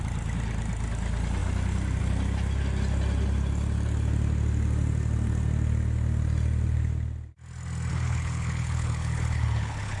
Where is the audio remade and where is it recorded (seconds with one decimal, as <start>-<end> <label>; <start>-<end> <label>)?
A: 0.0-7.9 recorded; 7.9-10.0 remade